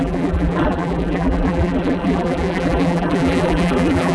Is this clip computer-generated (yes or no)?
yes